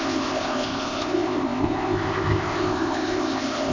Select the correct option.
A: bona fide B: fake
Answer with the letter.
B